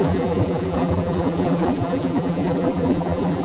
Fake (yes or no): yes